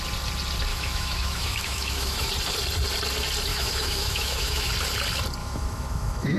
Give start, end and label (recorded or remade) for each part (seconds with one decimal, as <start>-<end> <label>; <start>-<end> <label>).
0.0-0.7 recorded; 0.7-2.3 remade; 2.3-3.5 recorded; 3.5-4.7 remade; 4.7-5.4 recorded; 5.4-6.4 remade